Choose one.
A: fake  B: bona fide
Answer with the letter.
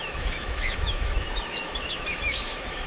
A